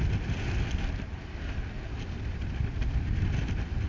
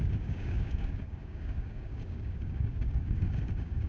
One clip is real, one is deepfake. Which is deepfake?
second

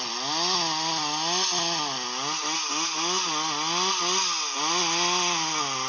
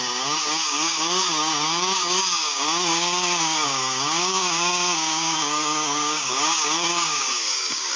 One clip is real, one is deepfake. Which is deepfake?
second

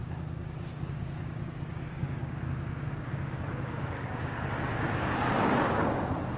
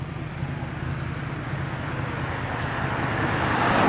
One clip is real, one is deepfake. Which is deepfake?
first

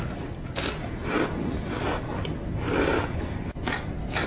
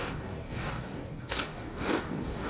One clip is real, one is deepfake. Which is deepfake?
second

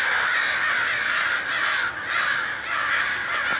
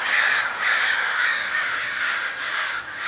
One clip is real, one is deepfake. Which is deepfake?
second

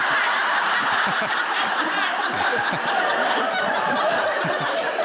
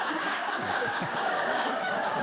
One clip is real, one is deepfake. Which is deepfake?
second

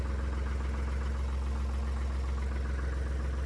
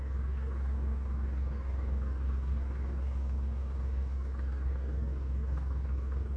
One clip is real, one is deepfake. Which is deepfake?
second